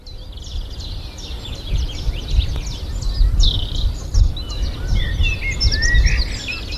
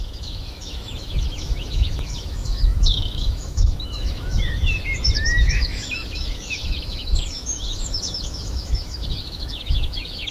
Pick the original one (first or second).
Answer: first